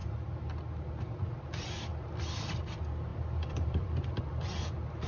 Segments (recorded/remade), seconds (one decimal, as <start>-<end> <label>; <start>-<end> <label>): 0.0-0.6 remade; 0.6-1.9 recorded; 1.9-2.6 remade; 2.6-3.1 recorded; 3.1-4.2 remade; 4.2-5.1 recorded